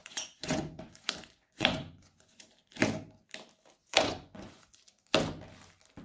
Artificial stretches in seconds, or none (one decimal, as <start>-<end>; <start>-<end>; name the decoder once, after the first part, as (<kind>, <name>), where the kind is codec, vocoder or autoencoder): 0.0-2.5 (vocoder, Vocos); 3.8-4.6